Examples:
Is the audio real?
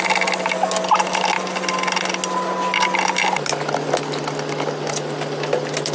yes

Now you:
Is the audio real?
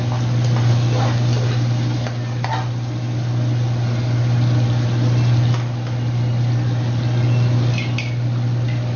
yes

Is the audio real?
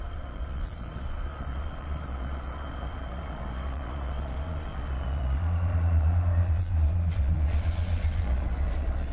no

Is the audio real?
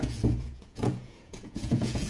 no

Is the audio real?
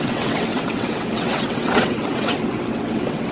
no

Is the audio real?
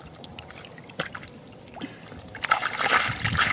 yes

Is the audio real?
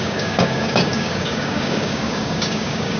no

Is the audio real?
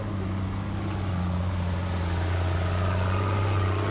yes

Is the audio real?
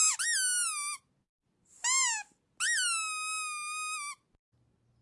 yes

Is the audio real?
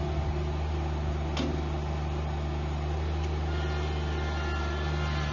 yes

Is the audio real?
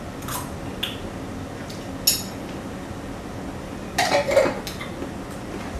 yes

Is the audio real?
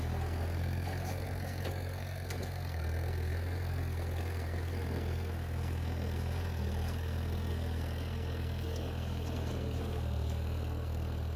no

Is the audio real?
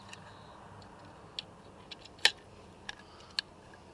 yes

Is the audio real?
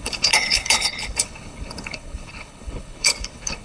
no